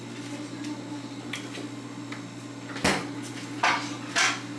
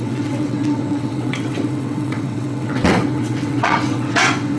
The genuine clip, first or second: first